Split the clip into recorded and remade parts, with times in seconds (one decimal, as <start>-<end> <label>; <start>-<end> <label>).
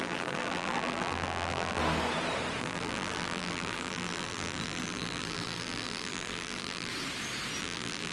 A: 0.0-1.8 remade; 1.8-2.6 recorded; 2.6-6.9 remade; 6.9-7.6 recorded; 7.6-8.1 remade